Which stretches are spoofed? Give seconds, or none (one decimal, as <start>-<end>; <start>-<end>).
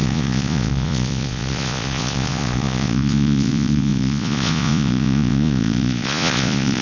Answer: 0.0-6.8